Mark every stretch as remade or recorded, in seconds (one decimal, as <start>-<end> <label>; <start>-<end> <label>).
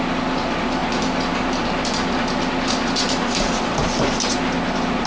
0.0-5.1 recorded